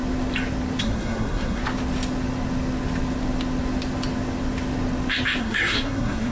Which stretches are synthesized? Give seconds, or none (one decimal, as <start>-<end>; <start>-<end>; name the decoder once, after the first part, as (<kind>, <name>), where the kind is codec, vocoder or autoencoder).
0.8-1.6 (codec, SNAC); 5.4-6.3